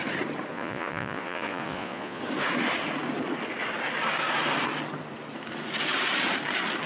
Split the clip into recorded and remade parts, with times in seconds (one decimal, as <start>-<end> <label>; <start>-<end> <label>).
0.0-0.5 recorded; 0.5-2.2 remade; 2.2-6.9 recorded